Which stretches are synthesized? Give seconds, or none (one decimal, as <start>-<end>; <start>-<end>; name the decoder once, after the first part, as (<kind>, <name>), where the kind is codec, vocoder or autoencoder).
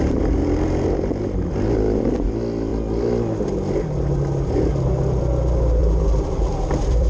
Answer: 5.8-7.1 (vocoder, BigVGAN v2)